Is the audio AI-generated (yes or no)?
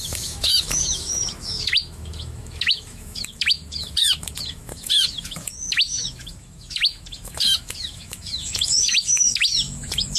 yes